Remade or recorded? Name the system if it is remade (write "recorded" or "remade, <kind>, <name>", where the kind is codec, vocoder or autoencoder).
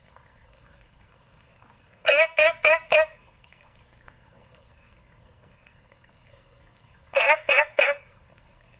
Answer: remade, codec, SNAC